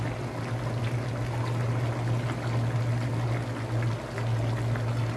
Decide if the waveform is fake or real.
real